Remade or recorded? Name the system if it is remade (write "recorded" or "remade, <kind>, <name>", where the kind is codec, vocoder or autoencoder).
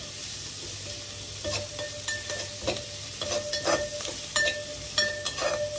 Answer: recorded